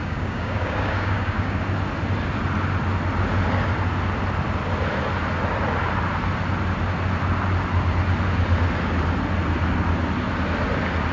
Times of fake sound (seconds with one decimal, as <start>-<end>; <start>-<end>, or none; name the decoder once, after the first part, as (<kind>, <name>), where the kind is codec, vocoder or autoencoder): 0.0-1.6 (codec, DAC)